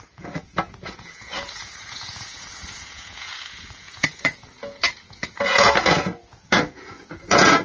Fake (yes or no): yes